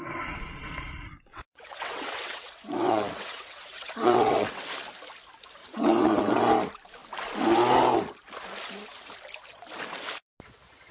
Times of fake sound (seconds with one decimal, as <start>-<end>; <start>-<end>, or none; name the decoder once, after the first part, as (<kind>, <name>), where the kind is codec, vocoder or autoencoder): 1.3-4.6 (vocoder, WaveNeXt); 5.6-6.4